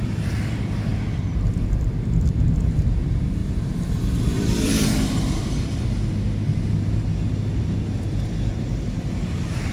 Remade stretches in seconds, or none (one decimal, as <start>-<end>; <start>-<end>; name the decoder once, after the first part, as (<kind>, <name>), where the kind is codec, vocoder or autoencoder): 0.0-3.4 (vocoder, BigVGAN v2); 4.3-4.7